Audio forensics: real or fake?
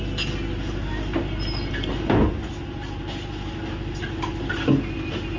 real